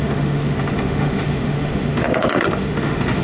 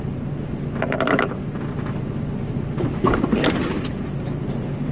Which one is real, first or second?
second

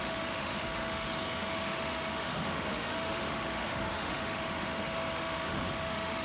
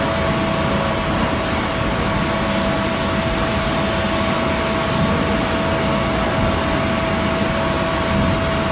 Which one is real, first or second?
second